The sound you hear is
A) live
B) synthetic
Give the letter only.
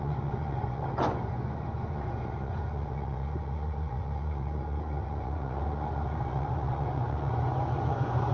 B